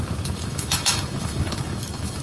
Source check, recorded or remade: remade